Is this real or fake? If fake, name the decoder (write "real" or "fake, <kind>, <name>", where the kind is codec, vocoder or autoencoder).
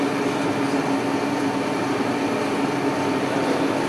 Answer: real